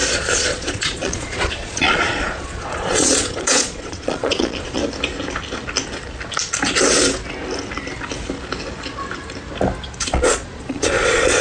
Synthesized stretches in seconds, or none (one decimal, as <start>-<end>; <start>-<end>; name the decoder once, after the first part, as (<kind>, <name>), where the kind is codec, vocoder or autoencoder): 0.0-4.8 (vocoder, Vocos); 10.0-11.4